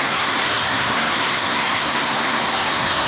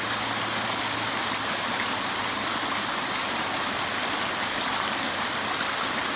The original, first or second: second